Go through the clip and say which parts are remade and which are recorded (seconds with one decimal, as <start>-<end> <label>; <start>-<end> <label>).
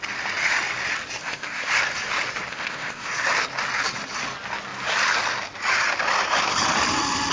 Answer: 0.0-1.2 recorded; 1.2-1.7 remade; 1.7-2.5 recorded; 2.5-3.1 remade; 3.1-7.3 recorded